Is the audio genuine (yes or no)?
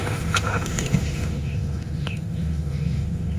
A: no